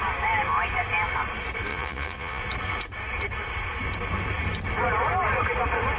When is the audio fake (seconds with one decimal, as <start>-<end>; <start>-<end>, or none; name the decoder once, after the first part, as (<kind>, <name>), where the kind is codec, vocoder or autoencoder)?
1.7-2.4 (vocoder, Vocos)